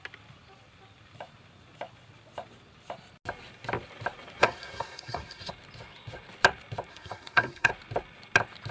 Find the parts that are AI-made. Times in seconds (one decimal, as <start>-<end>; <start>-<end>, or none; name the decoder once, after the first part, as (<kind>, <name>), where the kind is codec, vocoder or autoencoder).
4.4-5.5 (codec, SNAC); 6.9-7.7